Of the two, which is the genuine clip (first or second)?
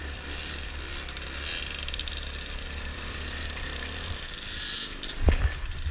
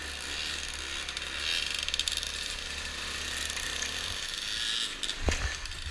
second